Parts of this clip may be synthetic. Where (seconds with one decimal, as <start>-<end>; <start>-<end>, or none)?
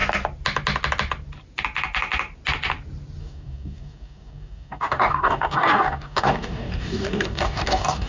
3.2-8.1